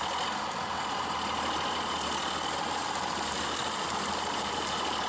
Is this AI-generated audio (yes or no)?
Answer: no